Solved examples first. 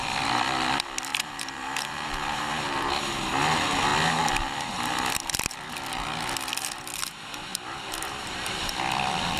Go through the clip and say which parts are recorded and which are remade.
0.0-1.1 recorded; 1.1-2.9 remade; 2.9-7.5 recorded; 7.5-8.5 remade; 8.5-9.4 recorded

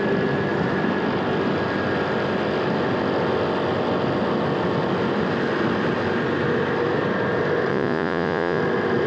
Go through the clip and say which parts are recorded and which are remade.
0.0-7.7 recorded; 7.7-8.6 remade; 8.6-9.1 recorded

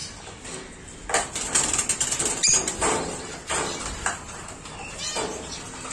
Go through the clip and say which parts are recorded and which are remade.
0.0-5.9 recorded

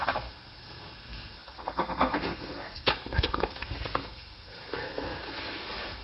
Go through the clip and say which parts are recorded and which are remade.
0.0-6.0 remade

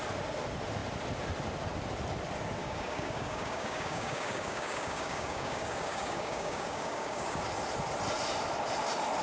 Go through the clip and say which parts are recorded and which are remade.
0.0-2.6 recorded; 2.6-7.4 remade; 7.4-9.2 recorded